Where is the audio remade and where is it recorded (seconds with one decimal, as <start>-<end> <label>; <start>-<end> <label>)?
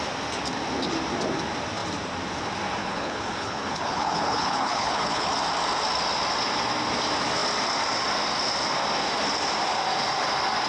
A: 0.0-2.8 recorded; 2.8-5.3 remade; 5.3-10.7 recorded